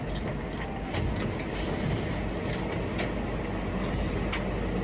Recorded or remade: recorded